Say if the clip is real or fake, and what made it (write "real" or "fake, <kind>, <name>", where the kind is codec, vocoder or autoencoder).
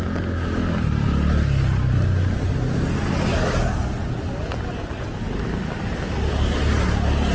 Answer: real